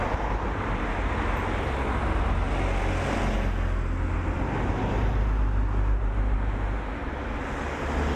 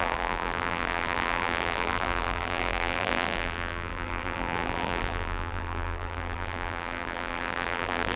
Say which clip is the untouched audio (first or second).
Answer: first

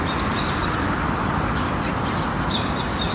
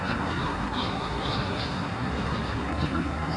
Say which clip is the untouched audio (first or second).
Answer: first